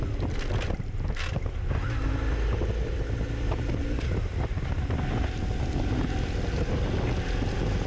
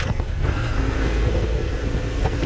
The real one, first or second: first